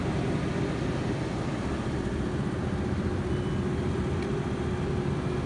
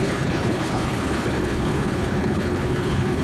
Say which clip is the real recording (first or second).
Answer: first